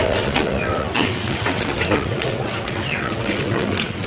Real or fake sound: fake